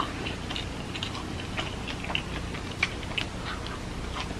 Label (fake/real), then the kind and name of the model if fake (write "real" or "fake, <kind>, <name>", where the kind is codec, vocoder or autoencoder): real